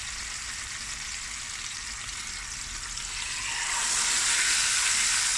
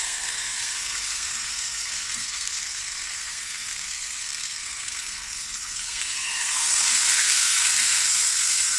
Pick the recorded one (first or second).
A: first